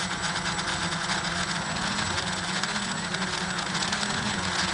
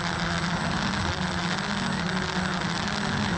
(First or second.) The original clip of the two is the second